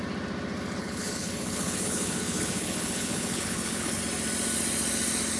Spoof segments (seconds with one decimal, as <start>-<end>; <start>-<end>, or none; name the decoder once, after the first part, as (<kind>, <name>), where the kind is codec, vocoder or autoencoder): 0.8-4.0 (codec, HILCodec)